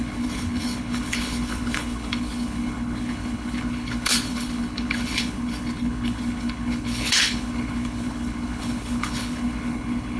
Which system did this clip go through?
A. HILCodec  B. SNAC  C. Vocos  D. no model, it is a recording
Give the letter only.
A